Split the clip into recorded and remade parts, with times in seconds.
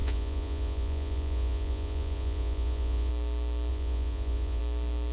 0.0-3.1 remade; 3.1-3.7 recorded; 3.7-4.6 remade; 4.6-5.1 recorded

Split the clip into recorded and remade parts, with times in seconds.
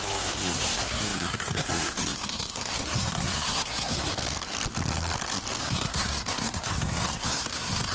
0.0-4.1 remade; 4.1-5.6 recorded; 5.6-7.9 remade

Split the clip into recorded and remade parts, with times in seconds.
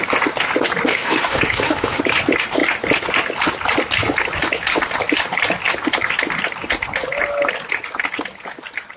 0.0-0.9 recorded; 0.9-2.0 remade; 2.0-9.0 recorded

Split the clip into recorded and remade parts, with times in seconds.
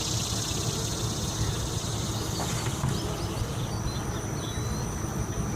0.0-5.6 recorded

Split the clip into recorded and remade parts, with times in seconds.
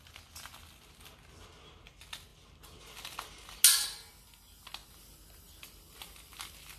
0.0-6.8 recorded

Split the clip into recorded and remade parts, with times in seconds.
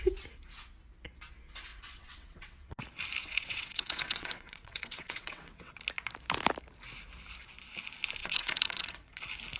0.0-1.7 recorded; 1.7-2.8 remade; 2.8-3.2 recorded; 3.2-5.8 remade; 5.8-8.2 recorded; 8.2-9.2 remade; 9.2-9.6 recorded